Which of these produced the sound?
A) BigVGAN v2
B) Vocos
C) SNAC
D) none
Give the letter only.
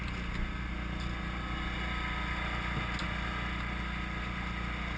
D